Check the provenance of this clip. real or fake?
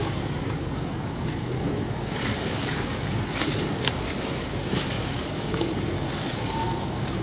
fake